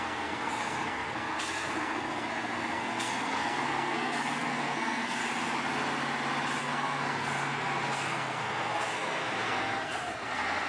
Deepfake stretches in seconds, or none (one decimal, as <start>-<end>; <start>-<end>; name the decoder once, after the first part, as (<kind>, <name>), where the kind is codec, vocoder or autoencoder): 0.0-5.2 (codec, SNAC); 6.6-10.7